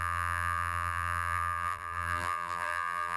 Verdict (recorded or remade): remade